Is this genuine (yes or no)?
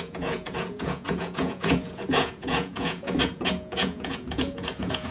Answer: no